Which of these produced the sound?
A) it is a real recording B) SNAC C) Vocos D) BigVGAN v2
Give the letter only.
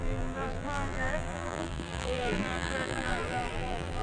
D